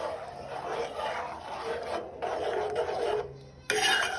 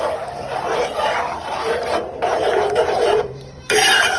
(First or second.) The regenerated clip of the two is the second